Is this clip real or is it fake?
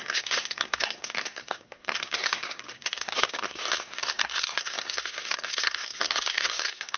fake